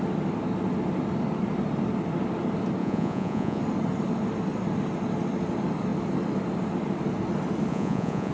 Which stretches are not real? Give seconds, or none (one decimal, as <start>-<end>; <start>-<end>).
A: 2.8-3.6; 7.7-8.3